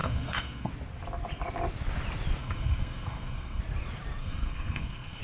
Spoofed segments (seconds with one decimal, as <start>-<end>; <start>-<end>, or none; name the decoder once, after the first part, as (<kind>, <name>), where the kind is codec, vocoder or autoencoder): 0.0-0.7 (codec, SNAC); 2.4-3.6; 4.2-5.2